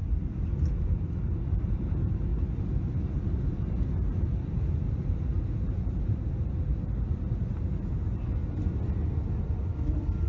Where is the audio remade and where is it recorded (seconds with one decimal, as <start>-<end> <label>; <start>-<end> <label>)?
0.0-2.3 remade; 2.3-2.9 recorded; 2.9-6.7 remade; 6.7-9.4 recorded; 9.4-10.3 remade